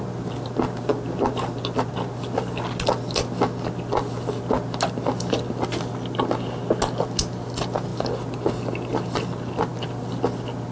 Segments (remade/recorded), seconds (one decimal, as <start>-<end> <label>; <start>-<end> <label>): 0.0-10.7 recorded